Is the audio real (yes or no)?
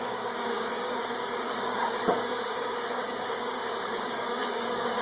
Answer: no